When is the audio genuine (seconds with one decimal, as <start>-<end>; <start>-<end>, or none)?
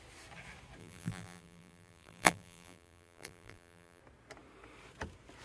0.0-0.8; 4.0-5.4